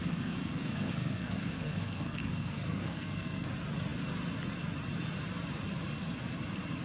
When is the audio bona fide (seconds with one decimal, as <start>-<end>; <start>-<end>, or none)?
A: 3.5-6.8